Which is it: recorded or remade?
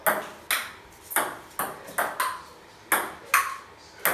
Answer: recorded